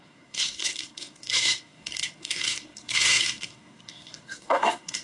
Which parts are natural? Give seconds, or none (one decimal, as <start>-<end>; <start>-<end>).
none